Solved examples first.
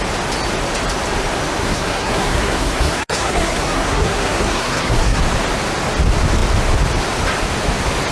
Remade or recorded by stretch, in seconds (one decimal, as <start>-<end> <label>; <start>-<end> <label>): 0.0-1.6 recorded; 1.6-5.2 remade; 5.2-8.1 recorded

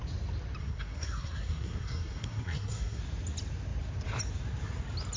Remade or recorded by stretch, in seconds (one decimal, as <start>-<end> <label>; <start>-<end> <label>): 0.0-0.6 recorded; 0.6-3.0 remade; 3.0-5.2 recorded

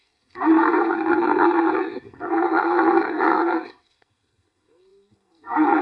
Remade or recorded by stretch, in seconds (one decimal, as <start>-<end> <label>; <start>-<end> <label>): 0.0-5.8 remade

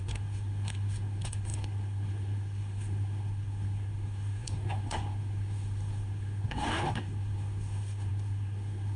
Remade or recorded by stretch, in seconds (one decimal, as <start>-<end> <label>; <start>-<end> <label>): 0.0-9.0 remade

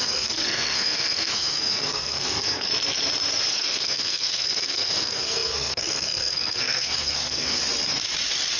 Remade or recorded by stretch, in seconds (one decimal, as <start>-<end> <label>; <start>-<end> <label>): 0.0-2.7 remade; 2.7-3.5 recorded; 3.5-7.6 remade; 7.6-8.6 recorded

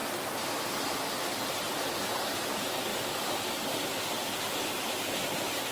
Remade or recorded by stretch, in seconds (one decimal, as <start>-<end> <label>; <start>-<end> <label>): 0.0-5.7 recorded

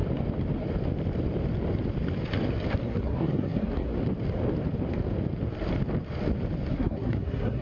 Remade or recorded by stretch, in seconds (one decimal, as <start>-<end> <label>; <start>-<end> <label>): 0.0-2.7 recorded; 2.7-3.9 remade; 3.9-6.7 recorded; 6.7-7.6 remade